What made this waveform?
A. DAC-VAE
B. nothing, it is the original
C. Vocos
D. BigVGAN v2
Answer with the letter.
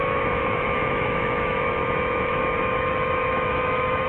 A